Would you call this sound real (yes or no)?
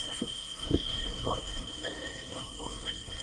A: no